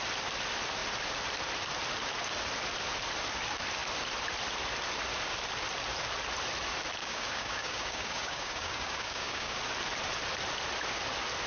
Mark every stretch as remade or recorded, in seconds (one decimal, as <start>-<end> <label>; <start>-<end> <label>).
0.0-7.0 recorded; 7.0-9.6 remade; 9.6-11.5 recorded